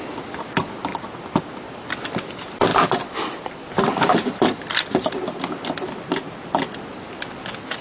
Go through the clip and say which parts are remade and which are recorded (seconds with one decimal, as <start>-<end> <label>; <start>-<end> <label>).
0.0-7.8 recorded